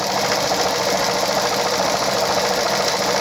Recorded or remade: recorded